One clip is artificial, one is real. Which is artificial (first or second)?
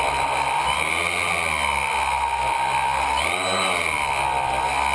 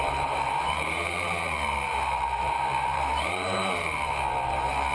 second